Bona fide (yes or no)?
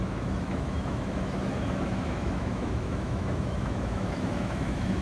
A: no